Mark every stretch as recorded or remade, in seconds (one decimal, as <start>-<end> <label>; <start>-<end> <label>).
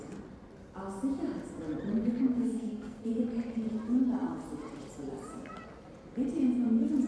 0.0-2.0 recorded; 2.0-3.1 remade; 3.1-7.1 recorded